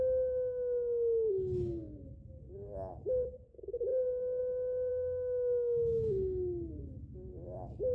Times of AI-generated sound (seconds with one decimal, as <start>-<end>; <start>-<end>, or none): 4.9-7.3